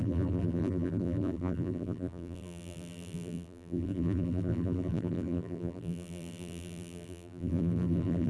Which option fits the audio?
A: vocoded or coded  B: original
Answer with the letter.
A